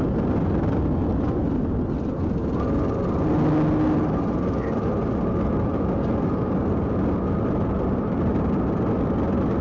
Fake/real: real